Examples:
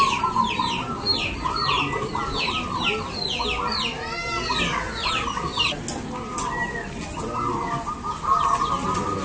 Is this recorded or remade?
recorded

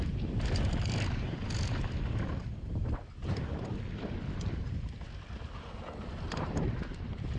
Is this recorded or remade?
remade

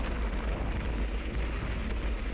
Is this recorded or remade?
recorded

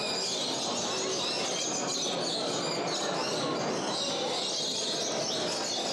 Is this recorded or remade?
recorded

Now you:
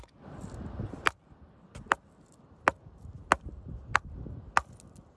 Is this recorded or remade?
recorded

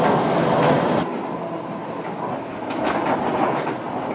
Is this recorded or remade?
recorded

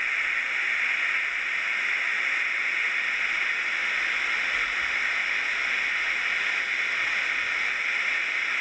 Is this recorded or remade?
recorded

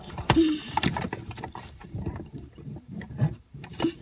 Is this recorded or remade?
remade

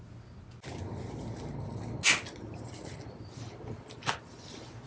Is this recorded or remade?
recorded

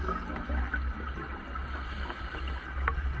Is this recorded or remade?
recorded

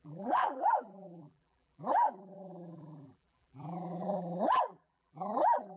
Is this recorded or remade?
remade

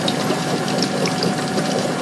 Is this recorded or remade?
remade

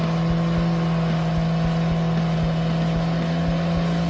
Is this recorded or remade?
recorded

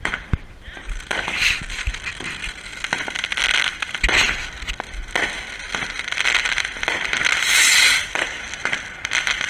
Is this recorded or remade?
recorded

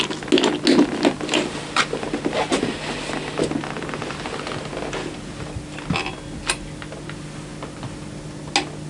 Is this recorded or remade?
recorded